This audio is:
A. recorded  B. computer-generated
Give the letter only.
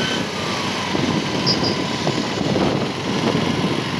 A